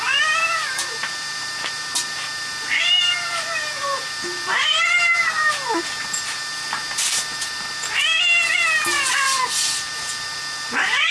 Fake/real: fake